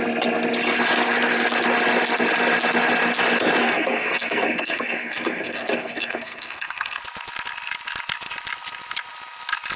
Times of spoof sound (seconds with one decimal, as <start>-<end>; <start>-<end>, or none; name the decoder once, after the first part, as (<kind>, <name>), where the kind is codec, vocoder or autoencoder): 3.6-7.0 (codec, SNAC)